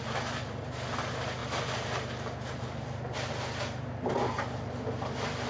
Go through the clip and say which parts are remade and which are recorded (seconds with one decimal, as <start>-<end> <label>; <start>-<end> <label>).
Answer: 0.0-5.5 recorded